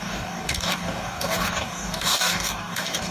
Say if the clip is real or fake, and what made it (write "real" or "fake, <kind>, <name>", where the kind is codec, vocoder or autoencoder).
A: fake, codec, DAC